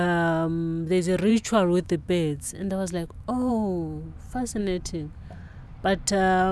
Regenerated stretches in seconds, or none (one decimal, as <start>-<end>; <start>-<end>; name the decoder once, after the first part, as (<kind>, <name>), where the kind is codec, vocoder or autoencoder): 1.3-3.5 (autoencoder, DAC-VAE); 4.6-5.4